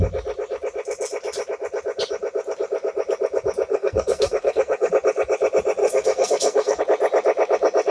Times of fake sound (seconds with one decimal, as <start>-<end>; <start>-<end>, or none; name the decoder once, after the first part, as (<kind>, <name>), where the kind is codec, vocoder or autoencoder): 3.7-4.9 (codec, SNAC); 5.8-6.8